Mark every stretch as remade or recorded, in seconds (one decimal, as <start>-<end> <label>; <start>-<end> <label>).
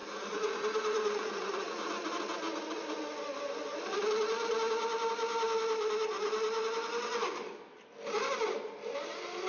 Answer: 0.0-1.9 remade; 1.9-9.5 recorded